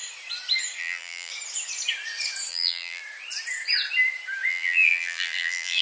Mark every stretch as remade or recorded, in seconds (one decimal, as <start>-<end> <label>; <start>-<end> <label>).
0.0-0.8 recorded; 0.8-1.3 remade; 1.3-2.5 recorded; 2.5-3.0 remade; 3.0-4.5 recorded; 4.5-5.8 remade